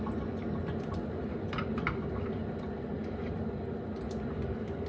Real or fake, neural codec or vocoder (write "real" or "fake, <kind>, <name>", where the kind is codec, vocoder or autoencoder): real